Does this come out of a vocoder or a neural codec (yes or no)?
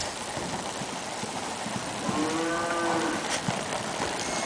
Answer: no